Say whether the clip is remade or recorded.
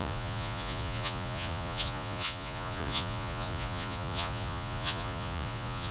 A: remade